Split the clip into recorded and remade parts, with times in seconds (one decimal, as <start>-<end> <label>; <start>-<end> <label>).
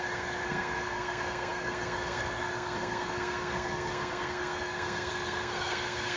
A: 0.0-6.2 remade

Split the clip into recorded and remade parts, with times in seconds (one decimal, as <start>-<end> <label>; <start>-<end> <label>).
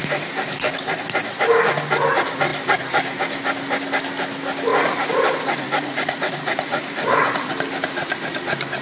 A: 0.0-4.7 recorded; 4.7-7.5 remade; 7.5-8.8 recorded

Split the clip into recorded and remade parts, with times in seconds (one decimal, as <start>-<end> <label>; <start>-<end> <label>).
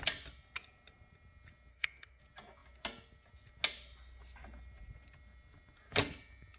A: 0.0-1.7 recorded; 1.7-2.2 remade; 2.2-6.6 recorded